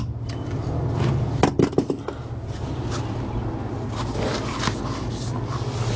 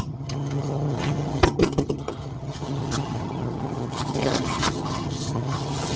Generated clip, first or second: second